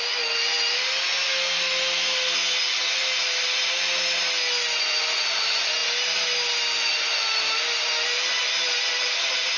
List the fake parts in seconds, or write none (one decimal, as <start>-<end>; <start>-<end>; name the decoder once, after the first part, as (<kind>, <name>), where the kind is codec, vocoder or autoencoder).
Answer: none